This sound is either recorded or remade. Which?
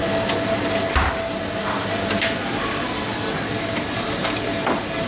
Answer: recorded